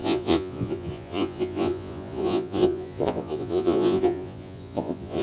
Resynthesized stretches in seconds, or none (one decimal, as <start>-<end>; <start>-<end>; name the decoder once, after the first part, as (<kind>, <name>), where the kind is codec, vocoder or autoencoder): 0.0-5.2 (vocoder, Vocos)